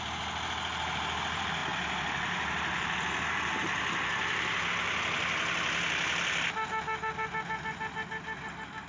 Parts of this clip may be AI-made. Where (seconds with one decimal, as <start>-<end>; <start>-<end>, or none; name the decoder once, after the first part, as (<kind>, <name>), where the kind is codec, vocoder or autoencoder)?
none